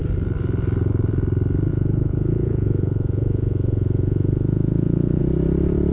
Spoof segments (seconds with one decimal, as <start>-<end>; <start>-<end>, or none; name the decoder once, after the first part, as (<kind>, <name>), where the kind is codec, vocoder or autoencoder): 1.7-5.2 (vocoder, Vocos)